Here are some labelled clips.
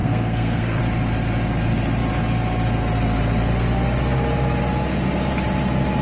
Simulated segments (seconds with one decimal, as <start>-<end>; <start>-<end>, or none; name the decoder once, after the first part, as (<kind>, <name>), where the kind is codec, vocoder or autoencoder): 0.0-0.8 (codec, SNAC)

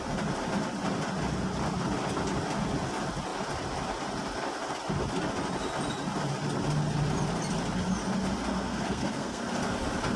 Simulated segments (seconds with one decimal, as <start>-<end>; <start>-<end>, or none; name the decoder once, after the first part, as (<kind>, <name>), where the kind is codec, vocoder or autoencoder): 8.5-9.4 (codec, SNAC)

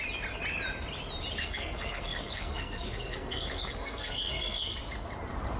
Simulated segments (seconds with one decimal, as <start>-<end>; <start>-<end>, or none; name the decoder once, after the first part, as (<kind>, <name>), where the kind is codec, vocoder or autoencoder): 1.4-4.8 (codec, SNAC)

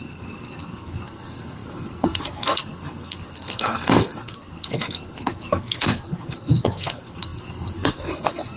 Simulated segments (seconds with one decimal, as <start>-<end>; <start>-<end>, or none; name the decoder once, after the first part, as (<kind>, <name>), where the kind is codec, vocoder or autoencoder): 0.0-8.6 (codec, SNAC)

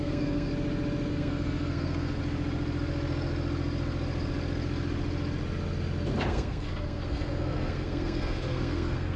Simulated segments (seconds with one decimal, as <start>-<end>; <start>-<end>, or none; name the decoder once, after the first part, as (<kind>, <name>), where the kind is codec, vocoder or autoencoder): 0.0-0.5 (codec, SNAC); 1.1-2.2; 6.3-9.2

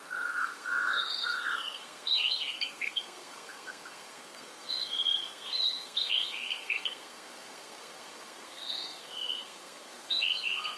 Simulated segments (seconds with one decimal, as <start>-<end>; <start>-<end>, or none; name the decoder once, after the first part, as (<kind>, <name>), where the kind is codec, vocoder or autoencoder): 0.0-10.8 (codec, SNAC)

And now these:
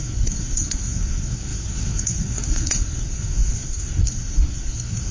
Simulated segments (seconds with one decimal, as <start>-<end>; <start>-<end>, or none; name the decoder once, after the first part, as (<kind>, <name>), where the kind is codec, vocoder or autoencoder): 0.0-5.1 (codec, SNAC)

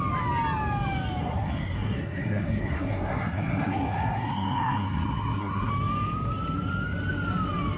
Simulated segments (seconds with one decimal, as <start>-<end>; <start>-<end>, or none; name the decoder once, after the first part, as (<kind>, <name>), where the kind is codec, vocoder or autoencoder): 1.2-5.7 (codec, SNAC)